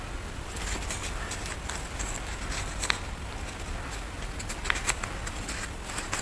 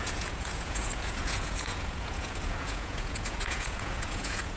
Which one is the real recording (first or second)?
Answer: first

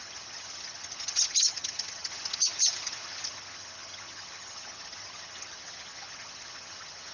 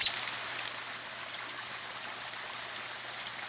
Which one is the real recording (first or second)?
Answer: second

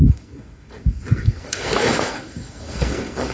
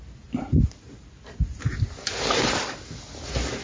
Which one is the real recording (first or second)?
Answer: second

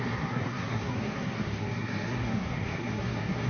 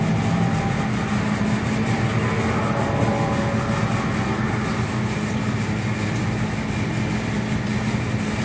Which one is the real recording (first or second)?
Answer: second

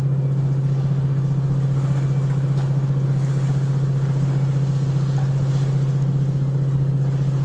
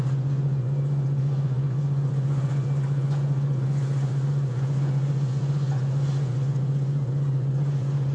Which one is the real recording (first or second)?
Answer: first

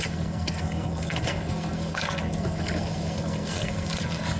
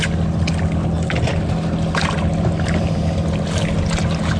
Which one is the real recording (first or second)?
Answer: second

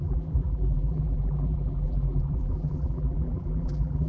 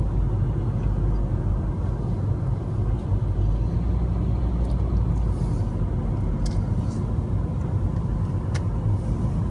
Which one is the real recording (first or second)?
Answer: second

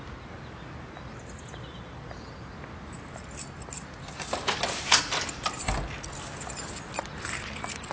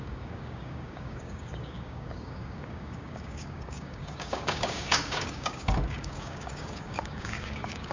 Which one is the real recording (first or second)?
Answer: first